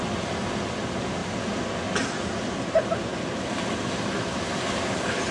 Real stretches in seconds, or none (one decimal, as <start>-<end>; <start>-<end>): 0.0-5.3